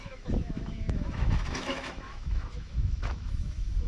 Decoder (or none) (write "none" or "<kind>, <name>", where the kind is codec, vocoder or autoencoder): autoencoder, DAC-VAE